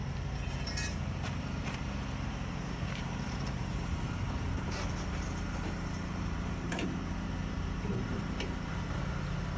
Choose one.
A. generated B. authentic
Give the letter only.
A